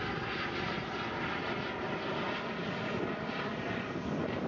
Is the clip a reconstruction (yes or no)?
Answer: no